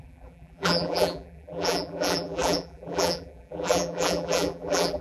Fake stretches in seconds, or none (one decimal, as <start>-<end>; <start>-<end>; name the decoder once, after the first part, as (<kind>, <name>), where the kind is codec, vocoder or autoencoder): 0.0-5.0 (vocoder, BigVGAN v2)

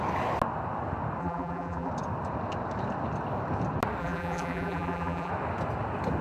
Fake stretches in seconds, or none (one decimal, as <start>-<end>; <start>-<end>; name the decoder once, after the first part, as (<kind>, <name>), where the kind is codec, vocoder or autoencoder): 1.2-1.9 (vocoder, BigVGAN v2); 4.0-5.3

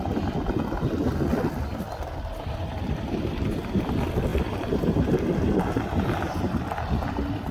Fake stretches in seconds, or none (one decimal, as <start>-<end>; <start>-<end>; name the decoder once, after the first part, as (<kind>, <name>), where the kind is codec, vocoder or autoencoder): 1.0-3.9 (vocoder, BigVGAN v2); 4.3-5.2

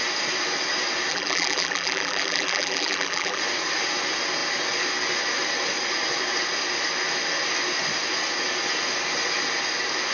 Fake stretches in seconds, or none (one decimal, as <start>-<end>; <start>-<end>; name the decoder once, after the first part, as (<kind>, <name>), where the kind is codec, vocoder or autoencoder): 1.1-3.4 (vocoder, BigVGAN v2)